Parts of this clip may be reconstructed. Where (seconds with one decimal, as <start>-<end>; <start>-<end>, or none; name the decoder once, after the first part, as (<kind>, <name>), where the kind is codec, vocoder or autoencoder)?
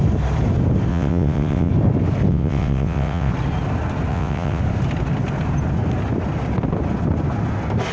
0.9-1.7 (vocoder, WaveNeXt); 2.3-3.3; 4.1-4.6